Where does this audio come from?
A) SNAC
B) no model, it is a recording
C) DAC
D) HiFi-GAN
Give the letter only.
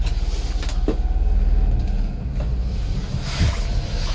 B